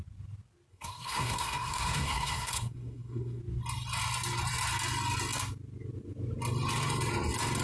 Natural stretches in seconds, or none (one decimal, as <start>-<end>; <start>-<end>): 0.0-0.7; 3.4-7.6

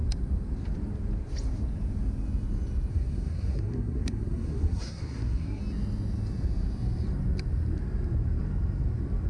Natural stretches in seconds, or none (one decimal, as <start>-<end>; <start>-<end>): 0.0-2.9; 5.6-9.3

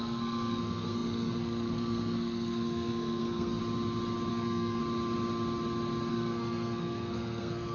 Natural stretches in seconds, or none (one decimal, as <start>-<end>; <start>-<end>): 3.6-4.3; 4.8-6.1

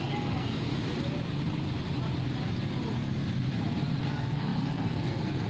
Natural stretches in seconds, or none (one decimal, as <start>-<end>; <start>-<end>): 0.7-4.0